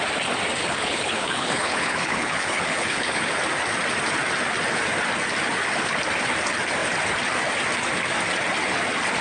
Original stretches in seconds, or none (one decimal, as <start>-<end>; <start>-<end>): 0.0-0.6; 3.3-9.2